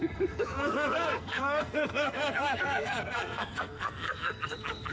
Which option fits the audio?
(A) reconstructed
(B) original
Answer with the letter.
A